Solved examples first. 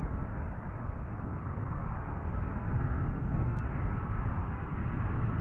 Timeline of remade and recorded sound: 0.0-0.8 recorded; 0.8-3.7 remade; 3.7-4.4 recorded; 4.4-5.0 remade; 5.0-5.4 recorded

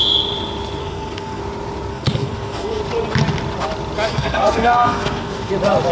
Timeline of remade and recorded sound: 0.0-0.8 recorded; 0.8-1.4 remade; 1.4-1.9 recorded; 1.9-2.8 remade; 2.8-4.1 recorded; 4.1-5.5 remade; 5.5-5.9 recorded

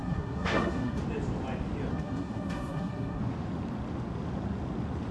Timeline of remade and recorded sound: 0.0-1.0 remade; 1.0-1.9 recorded; 1.9-3.2 remade; 3.2-5.1 recorded

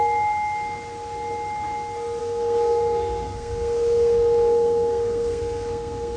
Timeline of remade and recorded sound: 0.0-2.2 recorded; 2.2-6.2 remade

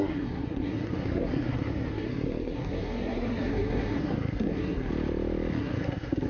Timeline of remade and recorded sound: 0.0-4.9 remade; 4.9-5.6 recorded; 5.6-6.3 remade

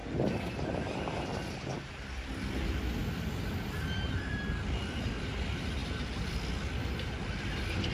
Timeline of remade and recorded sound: 0.0-7.9 recorded